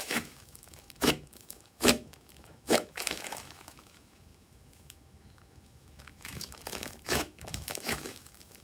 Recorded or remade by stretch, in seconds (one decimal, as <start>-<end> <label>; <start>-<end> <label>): 0.0-8.6 remade

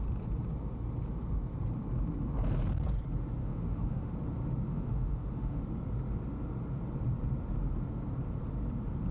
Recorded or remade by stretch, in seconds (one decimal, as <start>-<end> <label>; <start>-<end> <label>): 0.0-3.4 recorded; 3.4-4.1 remade; 4.1-4.7 recorded; 4.7-5.6 remade; 5.6-9.1 recorded

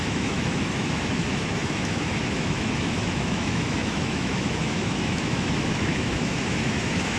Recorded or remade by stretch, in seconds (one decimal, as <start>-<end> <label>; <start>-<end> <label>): 0.0-7.2 remade

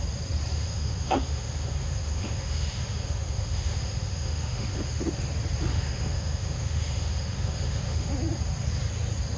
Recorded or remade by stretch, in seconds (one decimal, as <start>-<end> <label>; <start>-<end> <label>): 0.0-0.5 recorded; 0.5-5.0 remade; 5.0-5.7 recorded; 5.7-8.1 remade; 8.1-9.4 recorded

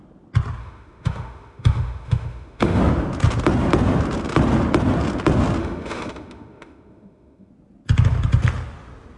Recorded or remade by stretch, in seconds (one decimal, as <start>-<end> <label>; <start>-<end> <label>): 0.0-0.6 recorded; 0.6-2.8 remade; 2.8-5.6 recorded; 5.6-7.5 remade; 7.5-9.2 recorded

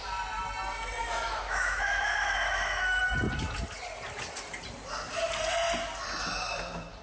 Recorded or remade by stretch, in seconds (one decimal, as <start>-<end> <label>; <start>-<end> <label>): 0.0-1.0 recorded; 1.0-3.0 remade; 3.0-7.0 recorded